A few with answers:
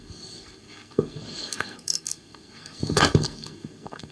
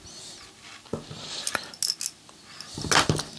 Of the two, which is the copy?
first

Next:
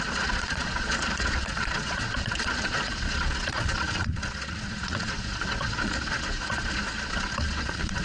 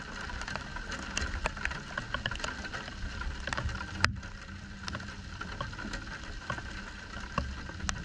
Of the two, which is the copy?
first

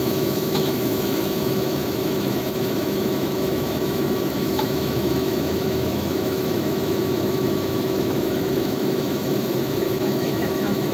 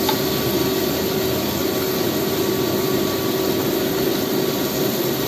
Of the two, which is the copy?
first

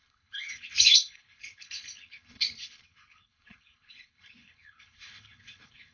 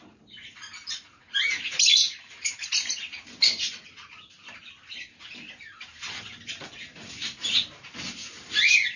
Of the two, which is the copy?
first